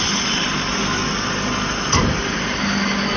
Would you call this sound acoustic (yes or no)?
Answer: yes